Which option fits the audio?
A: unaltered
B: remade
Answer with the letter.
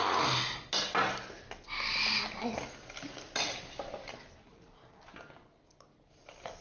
A